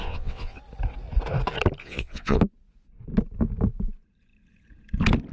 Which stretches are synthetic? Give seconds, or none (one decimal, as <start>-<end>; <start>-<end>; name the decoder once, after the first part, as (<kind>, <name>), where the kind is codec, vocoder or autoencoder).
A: 0.0-0.6 (vocoder, WaveNeXt); 1.8-2.4